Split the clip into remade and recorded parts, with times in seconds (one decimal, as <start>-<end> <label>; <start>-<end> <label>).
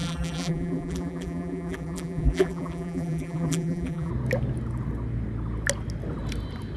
0.0-4.1 remade; 4.1-6.8 recorded